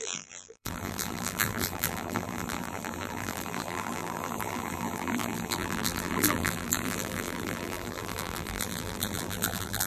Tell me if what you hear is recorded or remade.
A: remade